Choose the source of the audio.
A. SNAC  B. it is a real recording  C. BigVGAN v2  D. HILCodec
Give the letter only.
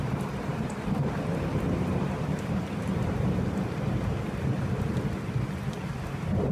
C